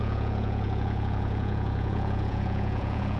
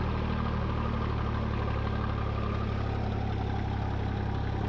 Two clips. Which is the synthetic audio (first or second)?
first